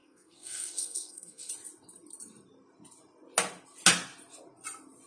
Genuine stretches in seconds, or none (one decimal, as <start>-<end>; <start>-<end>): 1.5-5.1